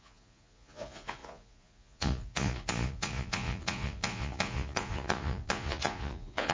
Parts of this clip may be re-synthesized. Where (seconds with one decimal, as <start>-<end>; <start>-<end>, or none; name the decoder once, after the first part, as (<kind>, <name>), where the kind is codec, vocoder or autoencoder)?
0.0-6.5 (vocoder, Vocos)

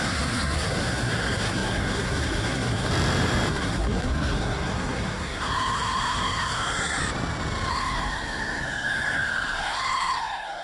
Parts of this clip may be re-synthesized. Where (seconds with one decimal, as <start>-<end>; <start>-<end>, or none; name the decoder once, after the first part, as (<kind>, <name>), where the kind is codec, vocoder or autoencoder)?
0.0-2.9 (codec, SNAC); 3.5-7.0; 7.7-10.6

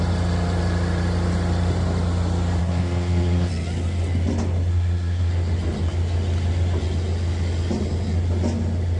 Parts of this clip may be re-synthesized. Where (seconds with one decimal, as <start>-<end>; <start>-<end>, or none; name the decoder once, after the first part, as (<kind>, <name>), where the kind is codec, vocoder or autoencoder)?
2.6-3.5 (codec, SNAC); 4.7-5.3

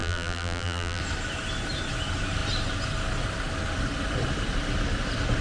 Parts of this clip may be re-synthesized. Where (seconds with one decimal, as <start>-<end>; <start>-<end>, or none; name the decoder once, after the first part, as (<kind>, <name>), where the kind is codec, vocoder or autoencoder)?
0.0-1.0 (vocoder, BigVGAN v2)

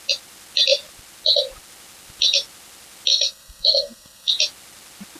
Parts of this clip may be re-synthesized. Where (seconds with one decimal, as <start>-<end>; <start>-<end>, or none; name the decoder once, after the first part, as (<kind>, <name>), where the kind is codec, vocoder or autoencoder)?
3.1-4.3 (codec, SNAC)

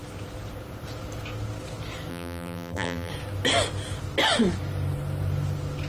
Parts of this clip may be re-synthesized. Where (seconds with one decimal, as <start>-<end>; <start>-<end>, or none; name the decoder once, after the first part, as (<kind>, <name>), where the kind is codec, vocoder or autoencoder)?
2.1-3.1 (vocoder, BigVGAN v2)